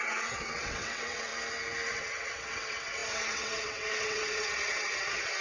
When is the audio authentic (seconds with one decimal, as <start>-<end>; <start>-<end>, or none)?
1.3-1.9